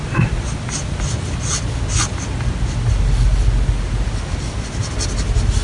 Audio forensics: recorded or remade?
recorded